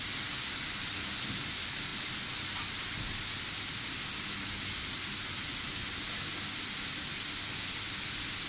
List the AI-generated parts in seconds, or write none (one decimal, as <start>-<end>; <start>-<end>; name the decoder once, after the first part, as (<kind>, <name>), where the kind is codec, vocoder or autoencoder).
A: none